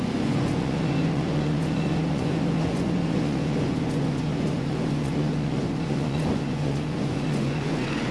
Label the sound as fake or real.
fake